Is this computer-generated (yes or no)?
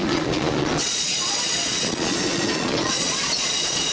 yes